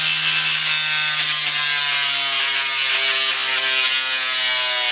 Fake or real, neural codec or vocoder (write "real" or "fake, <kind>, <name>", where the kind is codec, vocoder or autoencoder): real